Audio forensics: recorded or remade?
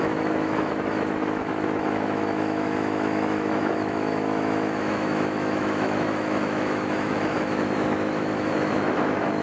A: remade